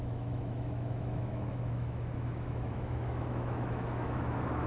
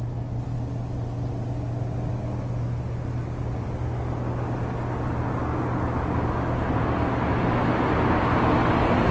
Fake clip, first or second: first